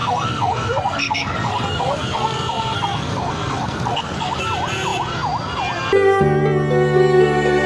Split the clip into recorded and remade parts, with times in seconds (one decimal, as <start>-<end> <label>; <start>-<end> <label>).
0.0-4.4 remade; 4.4-7.7 recorded